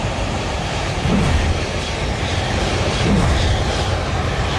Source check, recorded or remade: remade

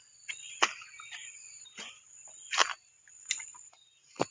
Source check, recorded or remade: remade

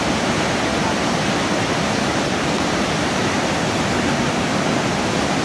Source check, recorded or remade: remade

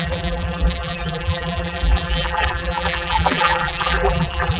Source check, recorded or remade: remade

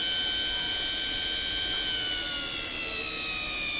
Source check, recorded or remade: recorded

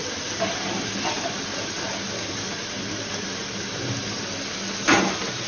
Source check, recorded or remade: recorded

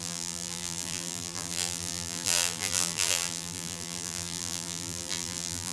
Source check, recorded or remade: remade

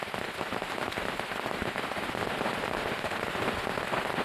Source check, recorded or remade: recorded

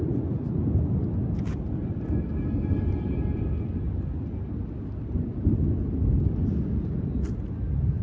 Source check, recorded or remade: recorded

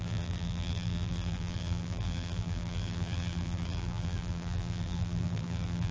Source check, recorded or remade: remade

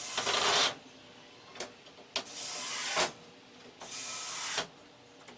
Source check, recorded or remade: recorded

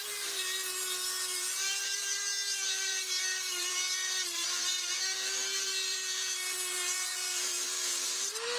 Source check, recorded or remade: remade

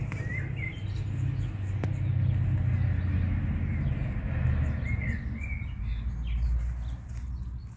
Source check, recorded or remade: recorded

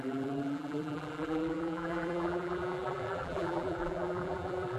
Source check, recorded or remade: remade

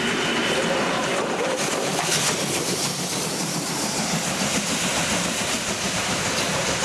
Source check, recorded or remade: remade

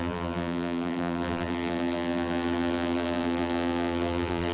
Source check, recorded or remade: remade